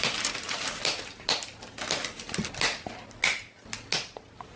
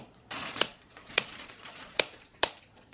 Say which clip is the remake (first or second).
second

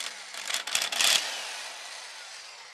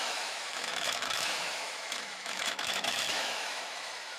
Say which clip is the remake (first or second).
second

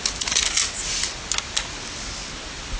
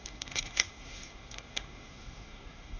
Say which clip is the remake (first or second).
second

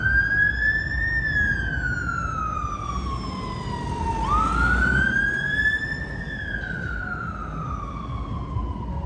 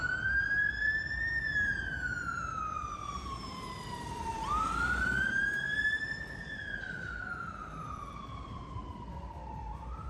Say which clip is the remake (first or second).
second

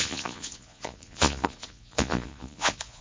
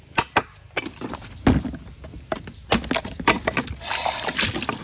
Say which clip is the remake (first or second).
first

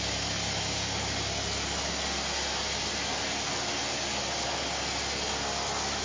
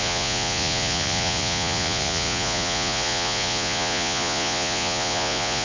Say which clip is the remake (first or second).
second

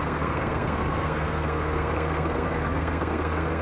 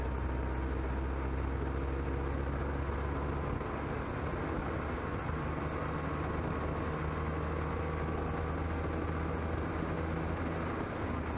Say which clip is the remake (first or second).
first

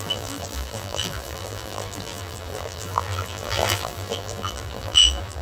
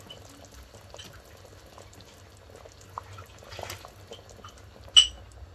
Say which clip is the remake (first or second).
first